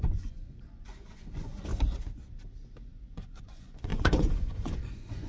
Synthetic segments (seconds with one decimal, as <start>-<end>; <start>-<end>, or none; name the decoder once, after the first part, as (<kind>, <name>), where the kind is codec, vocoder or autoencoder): 0.0-1.7 (vocoder, Vocos); 2.9-5.3